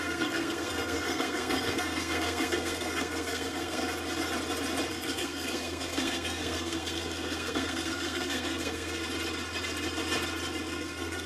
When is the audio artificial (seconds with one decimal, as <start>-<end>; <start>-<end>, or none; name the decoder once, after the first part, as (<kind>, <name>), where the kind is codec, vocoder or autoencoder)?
0.0-3.8 (codec, SNAC); 4.9-9.0; 10.7-11.3